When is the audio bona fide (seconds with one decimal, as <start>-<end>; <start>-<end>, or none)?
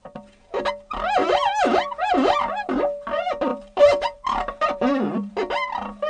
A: 0.0-1.2; 2.8-3.5; 5.3-6.1